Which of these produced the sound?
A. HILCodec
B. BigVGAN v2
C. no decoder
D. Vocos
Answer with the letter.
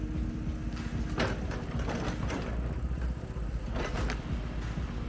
C